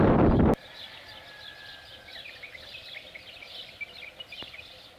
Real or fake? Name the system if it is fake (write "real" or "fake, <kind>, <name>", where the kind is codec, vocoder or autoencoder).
real